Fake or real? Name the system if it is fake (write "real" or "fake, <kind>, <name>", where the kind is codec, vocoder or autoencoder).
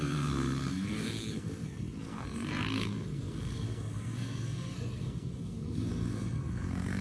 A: fake, codec, SNAC